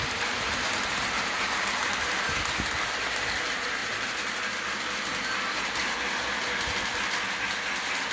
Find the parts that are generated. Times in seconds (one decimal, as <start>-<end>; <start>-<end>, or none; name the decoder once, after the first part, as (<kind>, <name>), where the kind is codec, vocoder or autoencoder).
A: 0.0-2.4 (vocoder, BigVGAN v2)